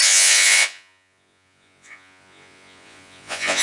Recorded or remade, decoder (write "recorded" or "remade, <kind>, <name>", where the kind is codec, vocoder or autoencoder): remade, vocoder, Vocos